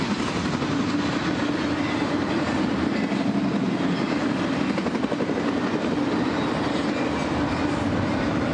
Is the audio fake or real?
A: real